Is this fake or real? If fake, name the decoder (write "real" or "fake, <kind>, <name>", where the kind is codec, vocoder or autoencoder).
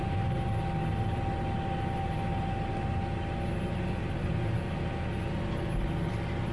real